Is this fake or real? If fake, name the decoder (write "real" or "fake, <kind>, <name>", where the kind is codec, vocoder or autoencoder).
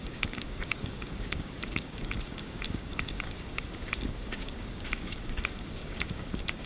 fake, codec, DAC